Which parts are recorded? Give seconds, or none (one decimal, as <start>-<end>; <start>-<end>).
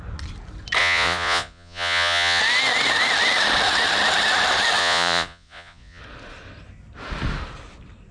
0.0-0.8; 2.4-4.8; 6.0-8.1